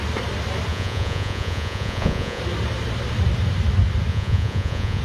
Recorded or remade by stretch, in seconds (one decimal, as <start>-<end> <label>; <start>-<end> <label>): 0.0-0.7 recorded; 0.7-2.4 remade; 2.4-4.1 recorded; 4.1-5.0 remade